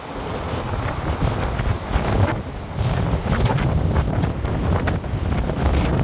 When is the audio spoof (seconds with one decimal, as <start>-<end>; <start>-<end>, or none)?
none